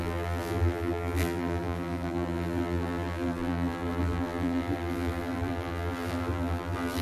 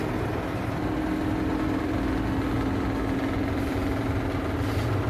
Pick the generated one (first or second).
first